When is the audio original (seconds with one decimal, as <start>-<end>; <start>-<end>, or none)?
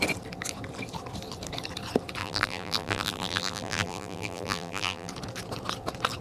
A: 0.0-2.2; 5.1-6.2